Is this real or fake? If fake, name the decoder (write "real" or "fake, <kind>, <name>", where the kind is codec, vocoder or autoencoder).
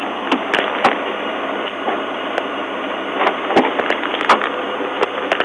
real